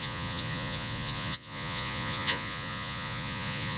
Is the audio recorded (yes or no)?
no